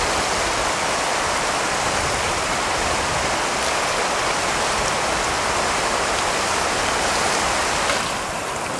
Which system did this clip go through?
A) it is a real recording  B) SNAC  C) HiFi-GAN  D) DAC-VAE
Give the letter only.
A